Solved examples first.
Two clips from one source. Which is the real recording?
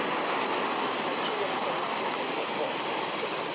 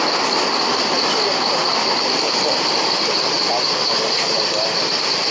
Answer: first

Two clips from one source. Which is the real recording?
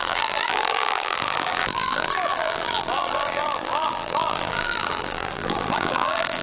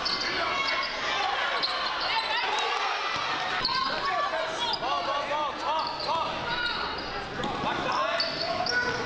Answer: second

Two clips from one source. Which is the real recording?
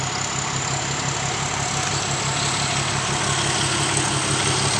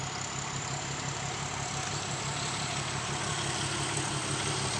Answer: first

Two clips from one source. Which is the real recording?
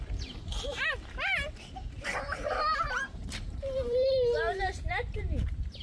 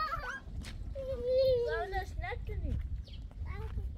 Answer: second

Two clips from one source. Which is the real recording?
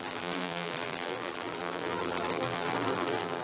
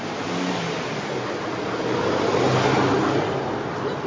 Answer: second